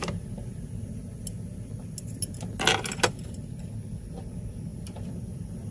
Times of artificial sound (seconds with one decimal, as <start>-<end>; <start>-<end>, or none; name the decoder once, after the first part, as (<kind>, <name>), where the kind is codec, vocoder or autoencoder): none